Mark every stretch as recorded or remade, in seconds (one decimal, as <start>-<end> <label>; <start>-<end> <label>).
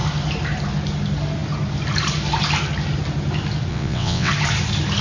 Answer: 0.0-3.7 recorded; 3.7-4.3 remade; 4.3-5.0 recorded